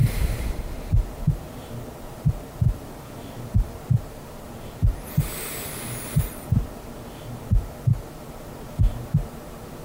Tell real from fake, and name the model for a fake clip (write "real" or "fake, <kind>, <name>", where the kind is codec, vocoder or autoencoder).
fake, vocoder, BigVGAN v2